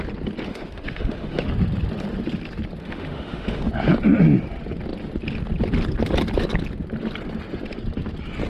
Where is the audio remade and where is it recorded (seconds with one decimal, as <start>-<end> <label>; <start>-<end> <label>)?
0.0-0.5 recorded; 0.5-1.4 remade; 1.4-2.8 recorded; 2.8-3.7 remade; 3.7-8.5 recorded